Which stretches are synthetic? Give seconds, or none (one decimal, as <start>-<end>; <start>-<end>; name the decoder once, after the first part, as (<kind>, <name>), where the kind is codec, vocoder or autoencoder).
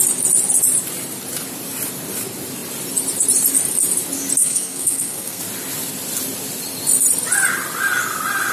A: 4.4-5.4 (codec, SNAC)